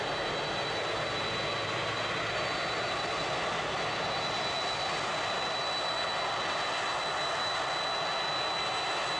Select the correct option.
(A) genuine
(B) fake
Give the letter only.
A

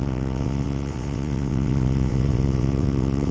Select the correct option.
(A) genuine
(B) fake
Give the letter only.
B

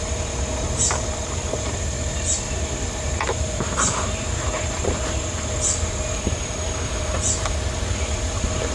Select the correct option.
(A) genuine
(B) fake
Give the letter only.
B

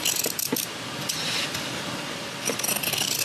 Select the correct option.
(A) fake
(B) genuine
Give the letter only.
B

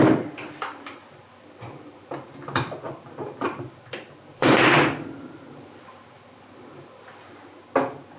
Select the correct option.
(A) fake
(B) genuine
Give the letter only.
A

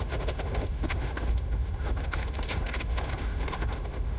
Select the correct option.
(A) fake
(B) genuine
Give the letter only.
A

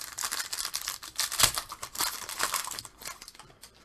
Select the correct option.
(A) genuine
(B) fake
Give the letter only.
B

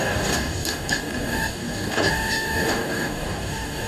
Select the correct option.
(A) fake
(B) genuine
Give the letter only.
A